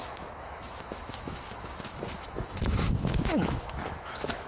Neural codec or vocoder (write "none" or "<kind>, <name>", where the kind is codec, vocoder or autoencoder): autoencoder, DAC-VAE